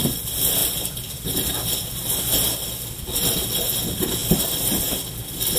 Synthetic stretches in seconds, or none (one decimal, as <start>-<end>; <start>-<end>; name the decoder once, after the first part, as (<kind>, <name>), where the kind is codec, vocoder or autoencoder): 0.6-1.5 (vocoder, BigVGAN v2); 4.2-5.6